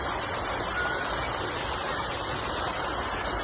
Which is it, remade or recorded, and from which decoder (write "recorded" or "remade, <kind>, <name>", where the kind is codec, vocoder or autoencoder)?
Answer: recorded